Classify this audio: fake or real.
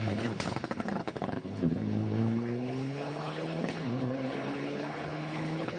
fake